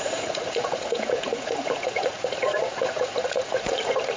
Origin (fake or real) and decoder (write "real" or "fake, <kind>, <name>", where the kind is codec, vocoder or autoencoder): fake, vocoder, Vocos